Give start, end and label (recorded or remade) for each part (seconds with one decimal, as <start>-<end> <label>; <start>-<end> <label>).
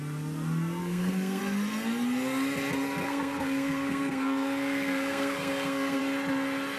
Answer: 0.0-0.8 recorded; 0.8-1.4 remade; 1.4-3.0 recorded; 3.0-6.0 remade; 6.0-6.8 recorded